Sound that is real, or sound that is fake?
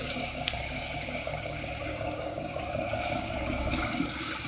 fake